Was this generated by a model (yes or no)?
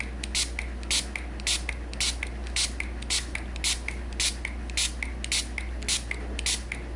no